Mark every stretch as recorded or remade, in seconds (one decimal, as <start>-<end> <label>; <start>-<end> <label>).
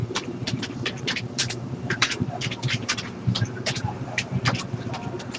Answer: 0.0-0.6 remade; 0.6-1.1 recorded; 1.1-4.3 remade; 4.3-5.4 recorded